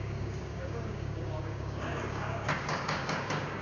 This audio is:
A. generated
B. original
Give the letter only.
A